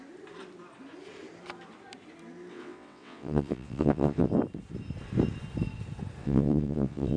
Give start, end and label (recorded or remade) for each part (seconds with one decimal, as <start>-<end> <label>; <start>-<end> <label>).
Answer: 0.0-2.5 recorded; 2.5-4.3 remade; 4.3-6.2 recorded; 6.2-7.2 remade